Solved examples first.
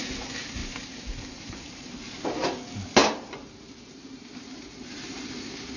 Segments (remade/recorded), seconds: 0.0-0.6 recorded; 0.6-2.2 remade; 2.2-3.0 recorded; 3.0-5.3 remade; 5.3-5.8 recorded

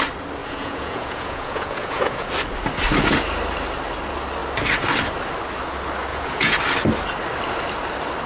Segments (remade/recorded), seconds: 0.0-0.4 recorded; 0.4-2.3 remade; 2.3-6.1 recorded; 6.1-6.6 remade; 6.6-8.3 recorded

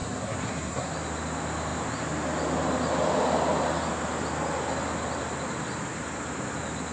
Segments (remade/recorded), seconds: 0.0-0.9 remade; 0.9-6.9 recorded

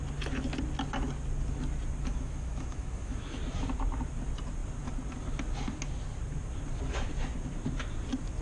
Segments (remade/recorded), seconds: 0.0-2.1 recorded; 2.1-3.4 remade; 3.4-8.4 recorded

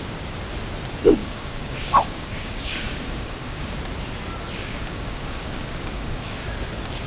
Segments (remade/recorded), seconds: 0.0-1.2 recorded; 1.2-3.7 remade; 3.7-4.6 recorded; 4.6-6.4 remade; 6.4-7.1 recorded

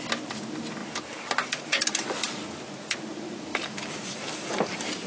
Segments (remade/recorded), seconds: 0.0-3.5 recorded; 3.5-5.1 remade

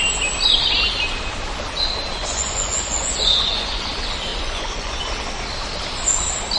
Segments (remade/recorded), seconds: 0.0-2.2 recorded; 2.2-3.9 remade; 3.9-4.3 recorded; 4.3-5.0 remade; 5.0-6.6 recorded